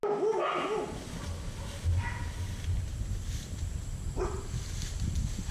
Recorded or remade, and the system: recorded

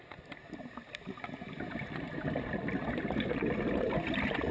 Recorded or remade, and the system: recorded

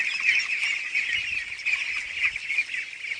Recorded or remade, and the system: recorded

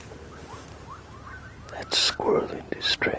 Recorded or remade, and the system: recorded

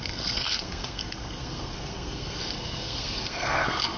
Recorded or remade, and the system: remade, codec, SNAC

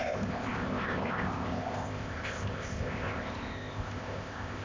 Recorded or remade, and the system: remade, codec, ZipCodec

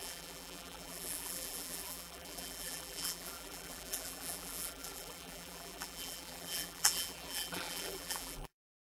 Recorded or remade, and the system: remade, vocoder, BigVGAN v2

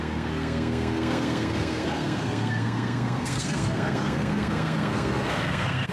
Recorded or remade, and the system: remade, codec, SNAC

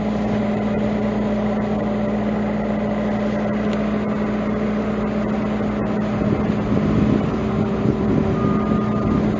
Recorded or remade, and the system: recorded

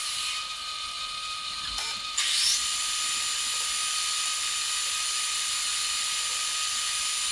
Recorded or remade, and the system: recorded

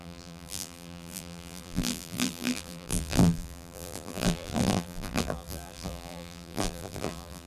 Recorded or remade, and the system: remade, vocoder, BigVGAN v2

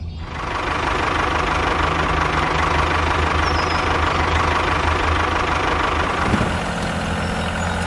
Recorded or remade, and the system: recorded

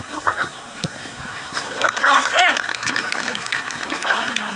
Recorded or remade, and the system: remade, codec, SNAC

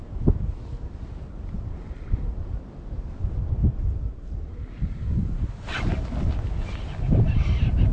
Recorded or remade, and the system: recorded